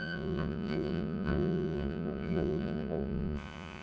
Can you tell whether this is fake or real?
fake